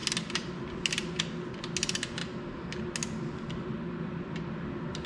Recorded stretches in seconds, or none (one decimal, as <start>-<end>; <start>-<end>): 0.0-5.1